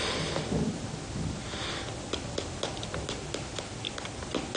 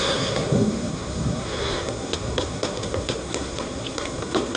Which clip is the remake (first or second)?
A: second